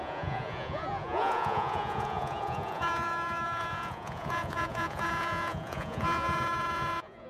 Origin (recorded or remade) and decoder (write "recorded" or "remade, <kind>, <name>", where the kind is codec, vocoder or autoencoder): remade, vocoder, Vocos